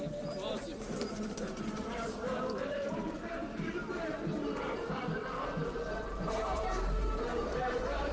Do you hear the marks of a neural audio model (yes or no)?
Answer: yes